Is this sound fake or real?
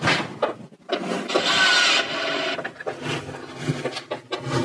real